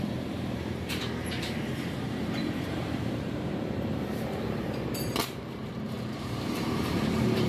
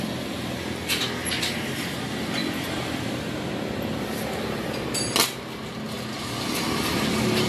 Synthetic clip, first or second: first